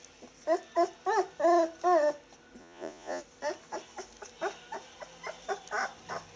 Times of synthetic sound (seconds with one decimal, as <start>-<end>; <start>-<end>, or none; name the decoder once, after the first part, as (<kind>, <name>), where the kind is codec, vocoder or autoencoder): 2.6-3.2 (vocoder, Vocos)